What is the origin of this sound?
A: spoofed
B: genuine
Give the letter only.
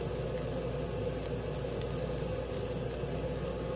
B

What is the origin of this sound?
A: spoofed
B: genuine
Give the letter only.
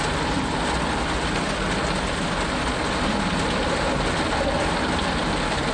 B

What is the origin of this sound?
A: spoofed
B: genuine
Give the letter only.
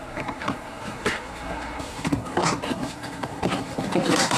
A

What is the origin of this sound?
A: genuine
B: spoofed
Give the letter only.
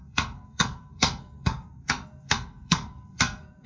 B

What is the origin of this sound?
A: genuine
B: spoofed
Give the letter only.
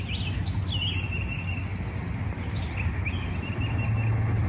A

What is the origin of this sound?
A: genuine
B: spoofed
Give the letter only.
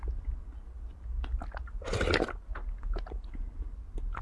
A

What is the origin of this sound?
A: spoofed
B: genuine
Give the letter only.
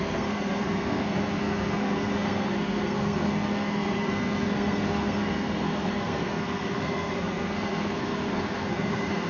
A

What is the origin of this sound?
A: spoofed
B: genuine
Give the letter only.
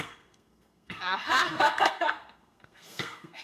A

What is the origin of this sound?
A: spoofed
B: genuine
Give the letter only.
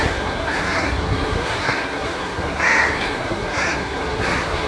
A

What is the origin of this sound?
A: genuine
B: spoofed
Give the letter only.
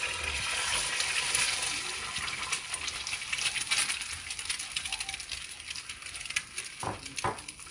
A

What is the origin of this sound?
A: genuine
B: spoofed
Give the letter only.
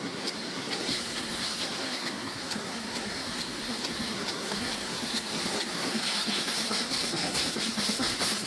B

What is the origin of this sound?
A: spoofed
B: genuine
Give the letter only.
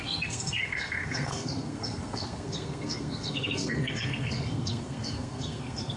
A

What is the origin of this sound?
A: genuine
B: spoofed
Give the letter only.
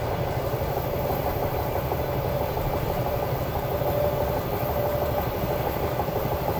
A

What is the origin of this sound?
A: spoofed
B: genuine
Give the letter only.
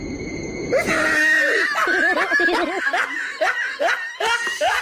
B